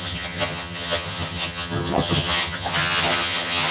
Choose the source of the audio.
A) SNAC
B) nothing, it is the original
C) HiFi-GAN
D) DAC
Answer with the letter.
C